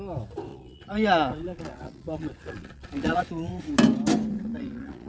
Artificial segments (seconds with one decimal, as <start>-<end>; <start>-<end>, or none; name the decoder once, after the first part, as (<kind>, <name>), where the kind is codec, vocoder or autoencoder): 0.5-3.6 (vocoder, Vocos); 4.3-5.1

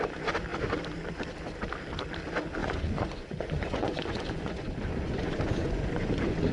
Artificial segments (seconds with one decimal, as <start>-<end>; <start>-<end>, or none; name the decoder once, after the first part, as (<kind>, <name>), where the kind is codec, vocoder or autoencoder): 2.6-6.5 (vocoder, Vocos)

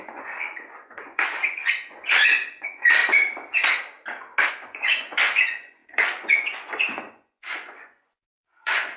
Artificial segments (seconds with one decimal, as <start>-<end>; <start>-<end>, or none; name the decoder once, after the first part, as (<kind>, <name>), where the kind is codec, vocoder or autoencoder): 0.0-3.0 (vocoder, Vocos); 4.5-9.0

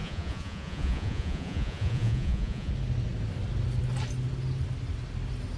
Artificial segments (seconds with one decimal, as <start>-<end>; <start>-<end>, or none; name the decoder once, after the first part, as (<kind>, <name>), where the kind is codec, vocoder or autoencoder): 0.0-2.7 (vocoder, Vocos)

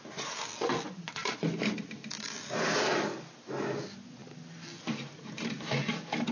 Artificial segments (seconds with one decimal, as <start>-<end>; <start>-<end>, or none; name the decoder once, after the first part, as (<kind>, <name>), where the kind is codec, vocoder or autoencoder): none